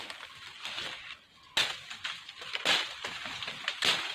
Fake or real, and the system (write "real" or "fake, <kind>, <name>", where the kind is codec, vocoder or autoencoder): real